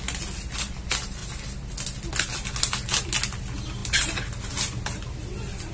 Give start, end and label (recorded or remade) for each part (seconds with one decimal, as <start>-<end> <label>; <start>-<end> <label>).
0.0-5.7 recorded